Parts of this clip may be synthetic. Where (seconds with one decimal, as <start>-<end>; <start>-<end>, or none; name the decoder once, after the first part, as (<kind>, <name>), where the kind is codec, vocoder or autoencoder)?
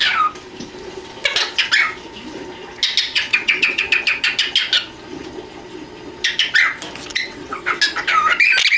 3.1-3.8 (vocoder, WaveNeXt); 7.1-7.8